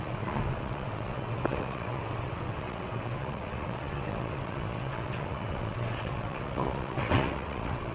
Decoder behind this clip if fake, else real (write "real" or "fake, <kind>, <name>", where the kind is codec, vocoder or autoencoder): fake, vocoder, WaveNeXt